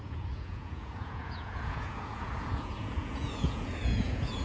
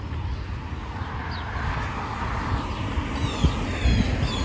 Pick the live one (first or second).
second